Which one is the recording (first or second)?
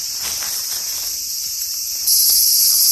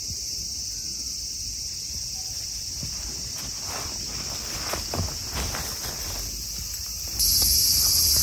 second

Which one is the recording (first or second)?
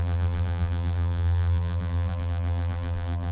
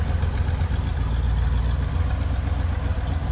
second